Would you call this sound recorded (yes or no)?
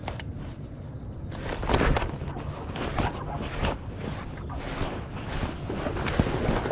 yes